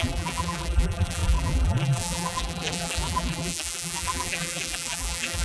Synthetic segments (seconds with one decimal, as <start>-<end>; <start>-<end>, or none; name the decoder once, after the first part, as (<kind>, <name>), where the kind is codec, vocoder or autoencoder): 0.0-5.4 (vocoder, BigVGAN v2)